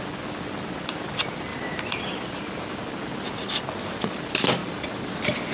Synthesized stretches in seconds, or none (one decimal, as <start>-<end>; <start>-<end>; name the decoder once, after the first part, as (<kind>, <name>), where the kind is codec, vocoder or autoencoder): 4.6-5.1 (vocoder, BigVGAN v2)